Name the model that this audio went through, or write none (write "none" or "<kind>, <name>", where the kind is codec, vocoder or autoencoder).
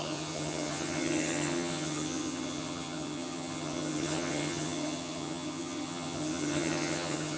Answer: vocoder, HiFi-GAN